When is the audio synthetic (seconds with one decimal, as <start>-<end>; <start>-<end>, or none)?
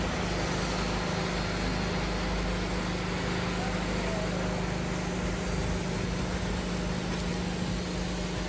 none